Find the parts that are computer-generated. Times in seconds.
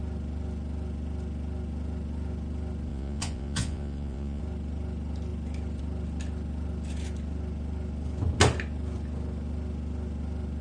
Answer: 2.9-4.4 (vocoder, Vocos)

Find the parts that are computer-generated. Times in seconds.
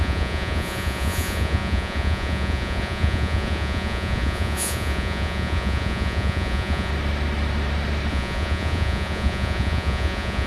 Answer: 0.0-6.9 (vocoder, Vocos); 8.1-10.5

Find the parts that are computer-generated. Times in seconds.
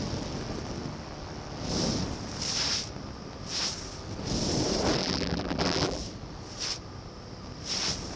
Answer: 5.0-6.0 (vocoder, BigVGAN v2)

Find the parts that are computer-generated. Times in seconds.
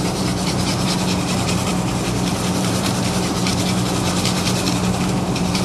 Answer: 0.0-1.7 (vocoder, BigVGAN v2); 2.3-3.5; 5.1-5.6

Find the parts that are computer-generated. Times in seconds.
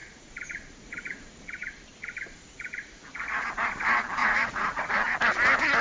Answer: 0.0-3.5 (vocoder, Vocos); 4.2-4.9